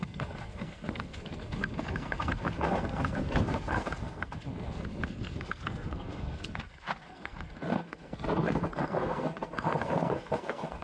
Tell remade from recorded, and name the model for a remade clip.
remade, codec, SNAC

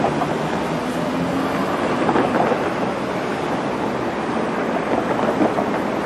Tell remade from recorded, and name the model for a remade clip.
recorded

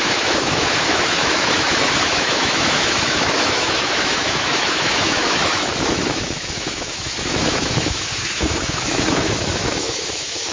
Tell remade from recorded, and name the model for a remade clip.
remade, autoencoder, DAC-VAE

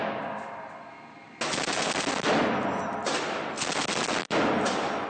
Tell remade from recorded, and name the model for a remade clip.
recorded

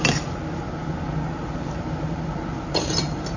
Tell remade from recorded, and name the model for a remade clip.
recorded